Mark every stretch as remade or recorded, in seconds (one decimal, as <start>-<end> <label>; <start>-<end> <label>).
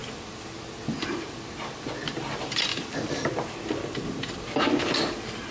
0.0-0.9 recorded; 0.9-2.7 remade; 2.7-4.8 recorded; 4.8-5.5 remade